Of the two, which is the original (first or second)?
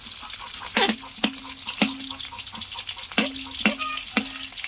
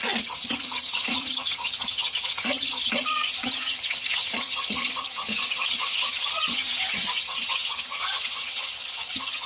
first